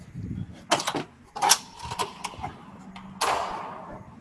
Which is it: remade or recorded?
recorded